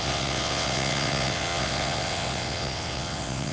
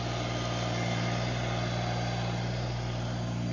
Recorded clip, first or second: second